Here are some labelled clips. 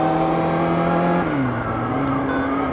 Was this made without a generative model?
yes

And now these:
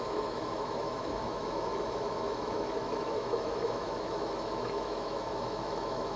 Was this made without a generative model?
no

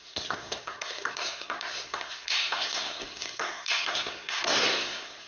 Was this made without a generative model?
no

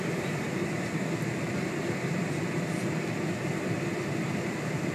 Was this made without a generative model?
no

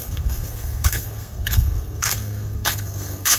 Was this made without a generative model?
no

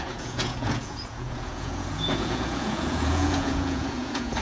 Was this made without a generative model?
no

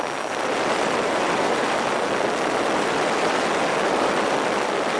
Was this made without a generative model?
yes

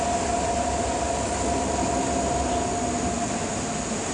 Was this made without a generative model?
yes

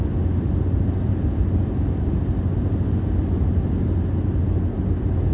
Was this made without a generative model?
yes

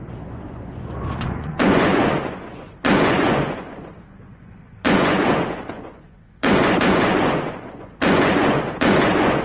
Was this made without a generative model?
no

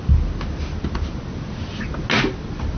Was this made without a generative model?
yes